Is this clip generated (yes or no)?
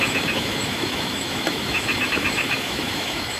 yes